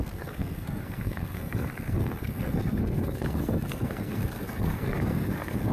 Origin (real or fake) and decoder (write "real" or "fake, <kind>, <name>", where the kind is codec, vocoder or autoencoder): fake, codec, SNAC